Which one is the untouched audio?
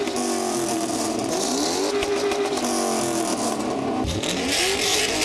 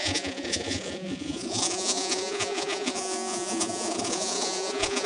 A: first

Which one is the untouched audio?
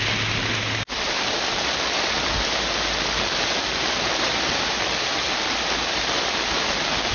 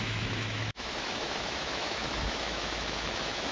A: first